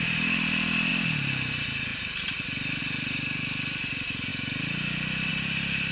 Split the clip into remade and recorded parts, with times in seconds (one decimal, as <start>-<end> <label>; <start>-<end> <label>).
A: 0.0-0.9 remade; 0.9-1.5 recorded; 1.5-4.3 remade; 4.3-5.3 recorded; 5.3-5.9 remade